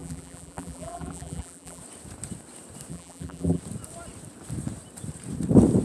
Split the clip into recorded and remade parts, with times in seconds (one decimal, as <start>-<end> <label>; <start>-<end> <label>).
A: 0.0-1.8 remade; 1.8-2.9 recorded; 2.9-3.6 remade; 3.6-5.8 recorded